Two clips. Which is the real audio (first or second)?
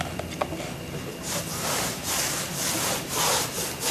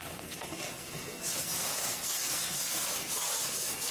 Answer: first